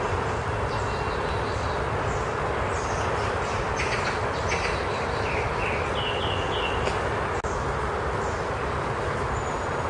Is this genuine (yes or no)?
yes